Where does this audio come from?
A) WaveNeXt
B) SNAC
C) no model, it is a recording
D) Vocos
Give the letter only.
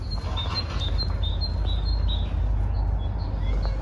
C